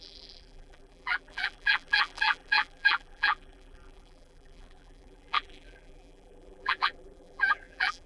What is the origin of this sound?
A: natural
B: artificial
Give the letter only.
B